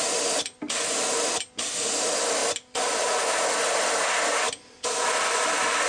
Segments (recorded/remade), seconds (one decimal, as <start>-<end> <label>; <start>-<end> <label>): 0.0-5.9 recorded